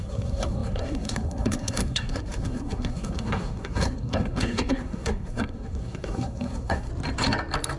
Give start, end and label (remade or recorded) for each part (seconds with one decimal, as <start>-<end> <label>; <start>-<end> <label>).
0.0-6.9 remade; 6.9-7.8 recorded